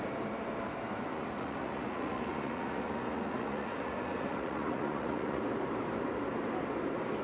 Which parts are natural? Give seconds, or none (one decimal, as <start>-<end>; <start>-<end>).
0.0-1.1; 5.4-7.2